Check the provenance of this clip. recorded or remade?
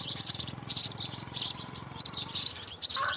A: remade